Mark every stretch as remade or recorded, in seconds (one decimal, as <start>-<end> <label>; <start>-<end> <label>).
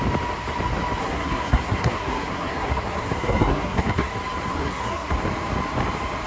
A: 0.0-1.0 recorded; 1.0-4.1 remade; 4.1-4.5 recorded; 4.5-5.1 remade; 5.1-6.3 recorded